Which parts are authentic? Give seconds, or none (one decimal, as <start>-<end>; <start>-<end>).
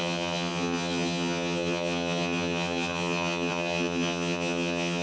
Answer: none